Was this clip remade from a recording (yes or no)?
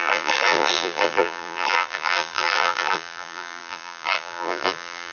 yes